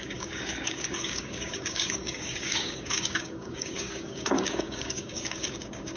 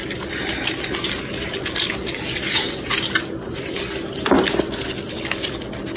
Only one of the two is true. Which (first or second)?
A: second